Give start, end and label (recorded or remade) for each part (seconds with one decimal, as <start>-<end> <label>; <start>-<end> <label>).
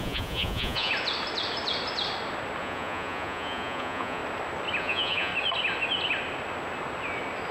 0.0-0.9 remade; 0.9-2.6 recorded; 2.6-4.2 remade; 4.2-4.8 recorded; 4.8-5.3 remade; 5.3-7.5 recorded